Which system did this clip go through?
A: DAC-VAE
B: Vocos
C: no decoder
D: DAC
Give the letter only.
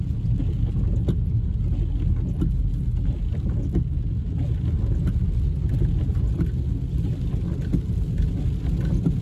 C